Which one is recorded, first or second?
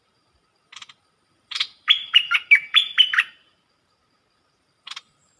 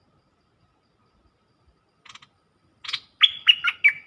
second